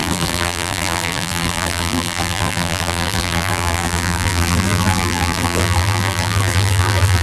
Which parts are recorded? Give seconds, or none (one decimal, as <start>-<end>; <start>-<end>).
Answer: none